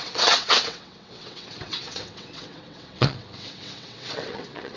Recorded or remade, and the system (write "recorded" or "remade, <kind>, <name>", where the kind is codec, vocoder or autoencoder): remade, vocoder, WaveNeXt